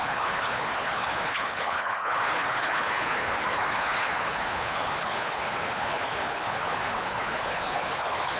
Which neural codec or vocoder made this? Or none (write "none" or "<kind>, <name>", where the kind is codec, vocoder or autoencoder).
codec, HILCodec